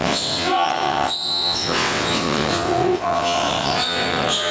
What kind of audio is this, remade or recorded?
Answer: remade